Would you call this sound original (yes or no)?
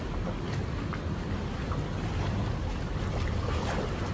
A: yes